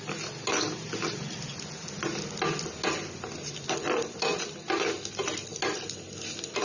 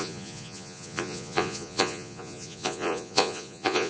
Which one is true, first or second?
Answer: first